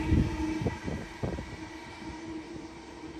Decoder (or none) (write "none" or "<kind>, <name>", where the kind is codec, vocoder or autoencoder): none